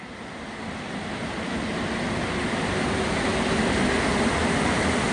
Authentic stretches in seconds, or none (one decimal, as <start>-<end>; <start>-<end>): 0.0-5.1